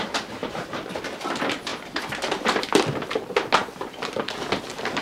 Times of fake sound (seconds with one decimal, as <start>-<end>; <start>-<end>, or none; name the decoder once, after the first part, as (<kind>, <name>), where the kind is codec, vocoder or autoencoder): 0.4-1.0 (vocoder, BigVGAN v2); 1.7-3.3